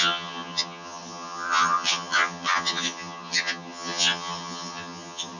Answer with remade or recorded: remade